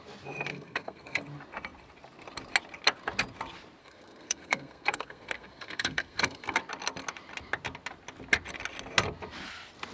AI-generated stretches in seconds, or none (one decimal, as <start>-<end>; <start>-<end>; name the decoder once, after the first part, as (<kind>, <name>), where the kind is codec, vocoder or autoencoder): 0.5-1.2 (codec, SNAC); 3.8-6.6